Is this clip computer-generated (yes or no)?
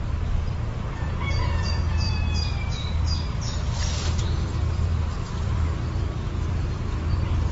yes